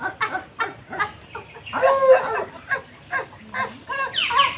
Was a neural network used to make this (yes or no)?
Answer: no